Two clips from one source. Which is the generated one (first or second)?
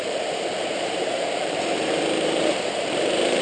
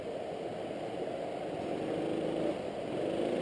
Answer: first